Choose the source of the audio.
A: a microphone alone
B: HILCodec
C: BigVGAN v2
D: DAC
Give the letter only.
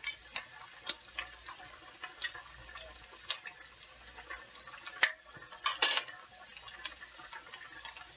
A